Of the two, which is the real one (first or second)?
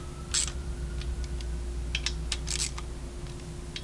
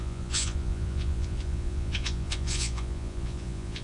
first